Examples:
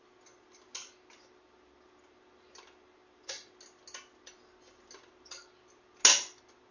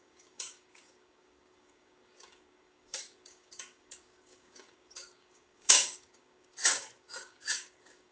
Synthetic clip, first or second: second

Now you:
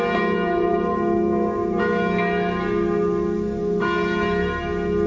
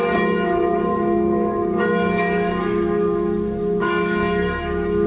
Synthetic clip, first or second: second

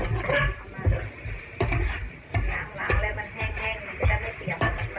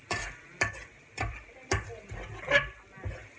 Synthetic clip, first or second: first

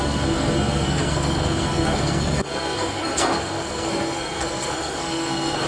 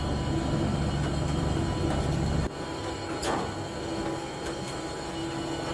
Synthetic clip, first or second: first